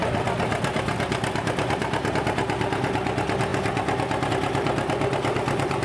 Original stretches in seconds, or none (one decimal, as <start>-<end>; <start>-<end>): 0.0-5.8